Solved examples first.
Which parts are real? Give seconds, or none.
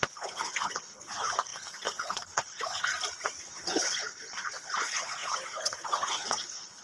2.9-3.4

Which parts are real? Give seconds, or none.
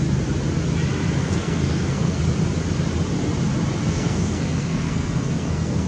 0.0-1.2; 2.2-3.8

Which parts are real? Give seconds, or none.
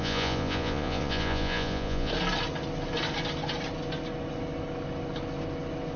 2.1-6.0